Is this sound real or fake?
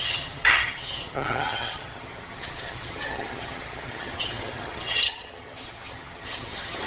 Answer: fake